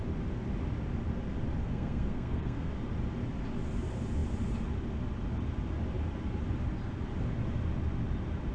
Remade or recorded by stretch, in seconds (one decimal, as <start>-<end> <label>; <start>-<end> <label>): 0.0-1.6 recorded; 1.6-2.7 remade; 2.7-8.5 recorded